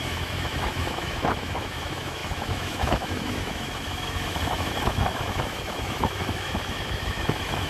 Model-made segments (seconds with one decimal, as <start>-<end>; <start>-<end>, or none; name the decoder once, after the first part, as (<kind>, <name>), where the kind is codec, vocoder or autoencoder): 0.0-7.7 (autoencoder, DAC-VAE)